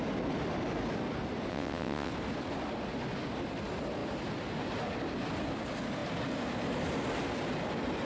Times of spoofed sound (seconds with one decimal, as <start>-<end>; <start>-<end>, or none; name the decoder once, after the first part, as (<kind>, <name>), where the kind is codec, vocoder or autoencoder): 1.5-2.1 (vocoder, WaveNeXt)